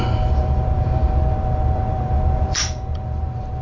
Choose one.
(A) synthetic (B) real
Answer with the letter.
A